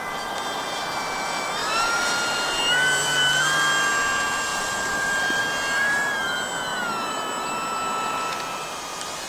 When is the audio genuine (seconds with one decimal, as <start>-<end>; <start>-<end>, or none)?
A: 0.0-1.6; 2.6-4.5; 5.4-9.3